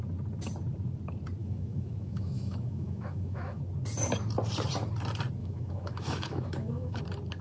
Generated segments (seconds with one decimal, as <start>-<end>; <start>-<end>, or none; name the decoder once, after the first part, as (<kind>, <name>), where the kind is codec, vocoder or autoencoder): 1.4-3.6 (autoencoder, DAC-VAE); 5.4-7.0